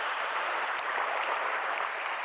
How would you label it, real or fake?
real